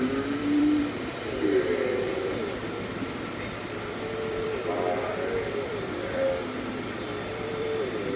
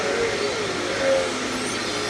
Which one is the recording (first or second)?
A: second